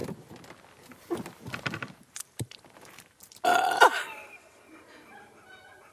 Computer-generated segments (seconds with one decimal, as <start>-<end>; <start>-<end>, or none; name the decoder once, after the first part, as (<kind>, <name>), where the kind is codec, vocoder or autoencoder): 1.3-5.9 (vocoder, BigVGAN v2)